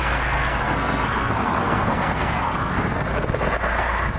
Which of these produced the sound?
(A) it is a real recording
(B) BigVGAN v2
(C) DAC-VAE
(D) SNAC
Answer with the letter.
D